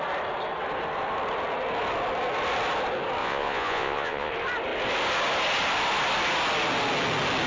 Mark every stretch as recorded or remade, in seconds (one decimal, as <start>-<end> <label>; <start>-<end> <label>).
0.0-3.2 recorded; 3.2-4.3 remade; 4.3-7.5 recorded